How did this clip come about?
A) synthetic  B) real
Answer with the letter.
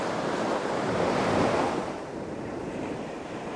A